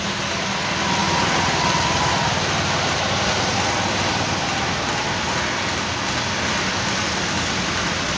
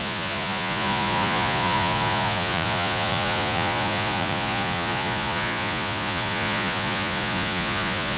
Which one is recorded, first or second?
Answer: first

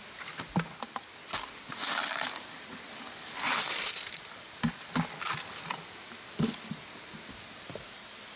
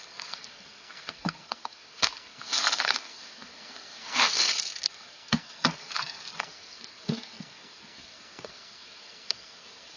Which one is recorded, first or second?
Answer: first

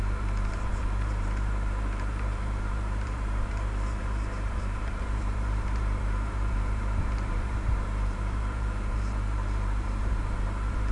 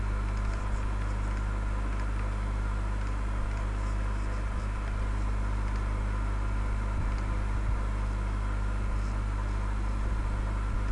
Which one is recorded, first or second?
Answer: second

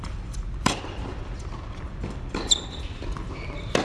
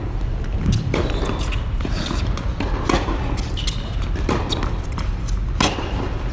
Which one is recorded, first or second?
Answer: second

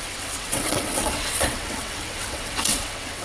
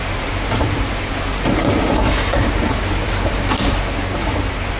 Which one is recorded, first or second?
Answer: second